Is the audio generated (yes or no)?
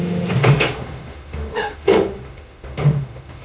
yes